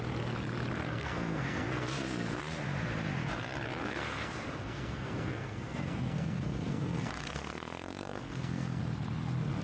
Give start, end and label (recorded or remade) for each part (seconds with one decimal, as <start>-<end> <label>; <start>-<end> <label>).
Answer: 0.0-0.8 recorded; 0.8-2.4 remade; 2.4-3.8 recorded; 3.8-8.8 remade; 8.8-9.6 recorded